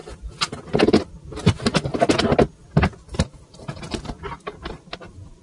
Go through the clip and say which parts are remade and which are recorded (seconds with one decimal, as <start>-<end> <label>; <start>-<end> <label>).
0.0-5.4 recorded